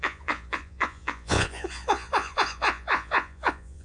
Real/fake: fake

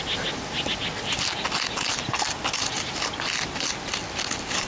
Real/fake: real